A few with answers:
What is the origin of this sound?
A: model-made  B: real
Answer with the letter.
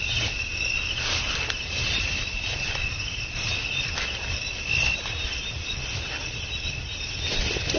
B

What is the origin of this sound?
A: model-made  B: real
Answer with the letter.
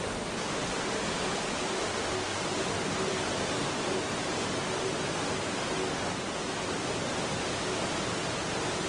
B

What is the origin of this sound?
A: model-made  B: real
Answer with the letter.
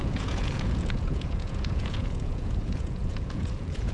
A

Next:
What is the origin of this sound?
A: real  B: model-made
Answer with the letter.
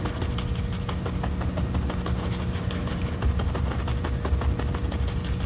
A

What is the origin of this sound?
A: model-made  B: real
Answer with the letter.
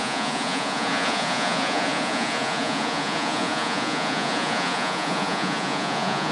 A